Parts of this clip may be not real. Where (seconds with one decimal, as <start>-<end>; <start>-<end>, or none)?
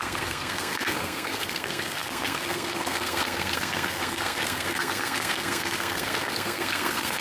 0.0-7.2